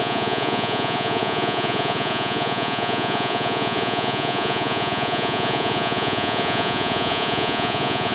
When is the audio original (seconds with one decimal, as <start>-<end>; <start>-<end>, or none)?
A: none